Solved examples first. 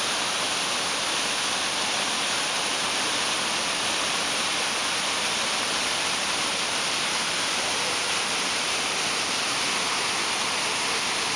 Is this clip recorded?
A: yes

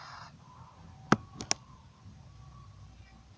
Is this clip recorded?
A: yes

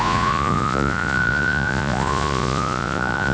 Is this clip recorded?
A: no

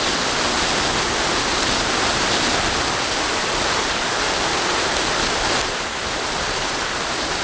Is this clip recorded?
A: yes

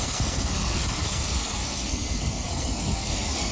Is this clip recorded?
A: no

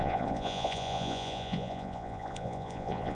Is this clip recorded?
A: no